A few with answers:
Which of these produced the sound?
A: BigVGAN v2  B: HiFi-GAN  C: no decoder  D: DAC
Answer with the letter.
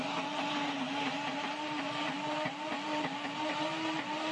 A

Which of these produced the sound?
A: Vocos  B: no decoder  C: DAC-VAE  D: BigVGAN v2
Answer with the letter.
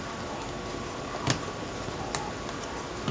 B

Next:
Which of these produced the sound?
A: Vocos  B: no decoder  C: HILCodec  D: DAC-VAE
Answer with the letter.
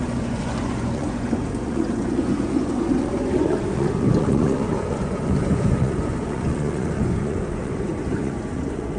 A